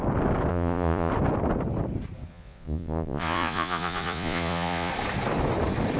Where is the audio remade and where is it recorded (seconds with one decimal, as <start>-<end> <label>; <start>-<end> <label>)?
0.0-0.5 recorded; 0.5-1.1 remade; 1.1-2.3 recorded; 2.3-4.9 remade; 4.9-6.0 recorded